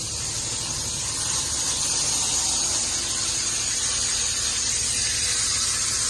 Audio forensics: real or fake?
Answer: real